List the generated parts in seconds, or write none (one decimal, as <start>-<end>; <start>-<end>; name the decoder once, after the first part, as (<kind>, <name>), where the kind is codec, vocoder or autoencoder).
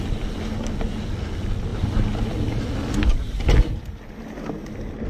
none